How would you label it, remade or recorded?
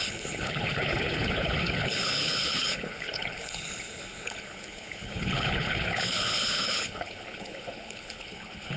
remade